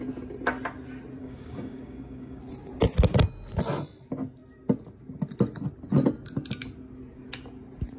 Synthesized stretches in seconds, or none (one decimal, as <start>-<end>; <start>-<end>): 1.2-2.4